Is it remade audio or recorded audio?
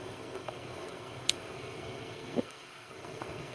remade